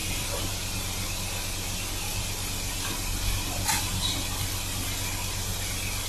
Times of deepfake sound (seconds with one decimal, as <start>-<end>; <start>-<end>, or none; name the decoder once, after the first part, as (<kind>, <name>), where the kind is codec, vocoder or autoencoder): 0.0-0.5 (vocoder, BigVGAN v2); 2.1-4.1